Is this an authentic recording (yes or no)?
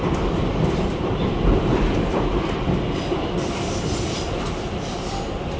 no